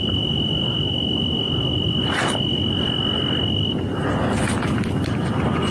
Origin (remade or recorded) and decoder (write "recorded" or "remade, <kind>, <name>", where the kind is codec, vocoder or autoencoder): recorded